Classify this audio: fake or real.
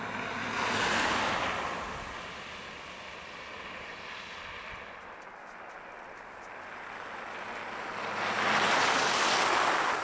real